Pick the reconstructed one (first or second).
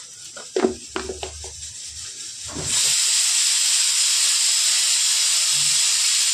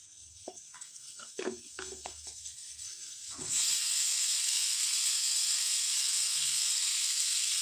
second